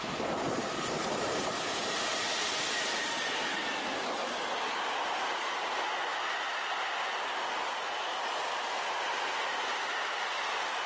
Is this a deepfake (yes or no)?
no